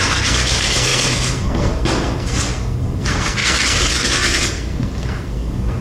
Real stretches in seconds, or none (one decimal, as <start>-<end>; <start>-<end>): none